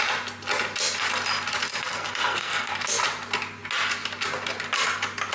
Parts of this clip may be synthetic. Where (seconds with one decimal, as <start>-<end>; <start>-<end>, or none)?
1.9-2.7